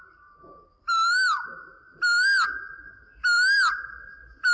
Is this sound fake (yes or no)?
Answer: yes